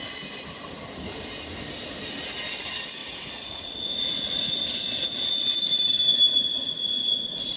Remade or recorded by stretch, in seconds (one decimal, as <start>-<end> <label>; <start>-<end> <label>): 0.0-3.0 recorded; 3.0-4.5 remade; 4.5-6.6 recorded; 6.6-7.6 remade